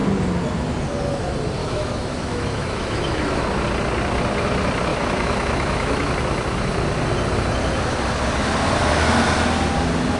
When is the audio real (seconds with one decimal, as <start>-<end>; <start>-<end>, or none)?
0.0-1.6; 3.4-4.9; 6.1-10.2